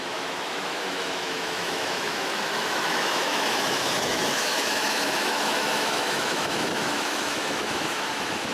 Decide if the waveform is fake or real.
fake